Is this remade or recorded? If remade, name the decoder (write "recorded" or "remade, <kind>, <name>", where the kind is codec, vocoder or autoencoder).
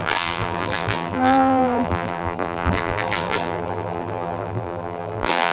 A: remade, vocoder, BigVGAN v2